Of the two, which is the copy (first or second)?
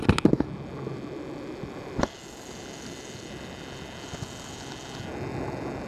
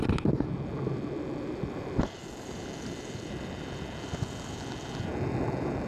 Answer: second